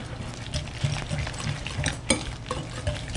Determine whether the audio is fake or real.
real